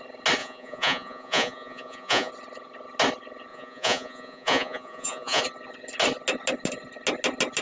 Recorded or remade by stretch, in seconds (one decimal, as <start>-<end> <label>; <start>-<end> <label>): 0.0-0.4 recorded; 0.4-2.3 remade; 2.3-3.5 recorded; 3.5-5.4 remade; 5.4-7.6 recorded